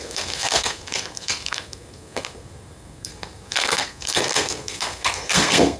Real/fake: fake